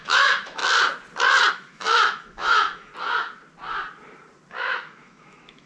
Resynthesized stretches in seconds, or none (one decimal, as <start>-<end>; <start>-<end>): 0.0-0.6; 1.5-2.9; 4.5-5.7